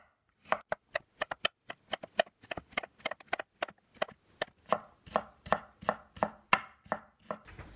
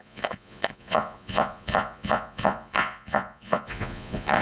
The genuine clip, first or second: first